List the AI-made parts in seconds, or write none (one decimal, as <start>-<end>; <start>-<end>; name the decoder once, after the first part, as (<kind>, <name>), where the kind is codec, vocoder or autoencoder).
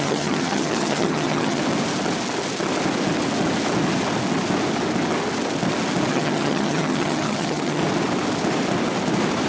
0.0-1.6 (vocoder, HiFi-GAN); 6.1-7.8